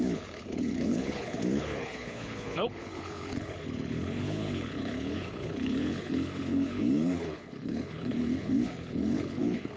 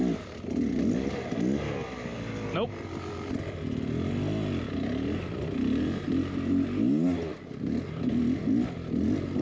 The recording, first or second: second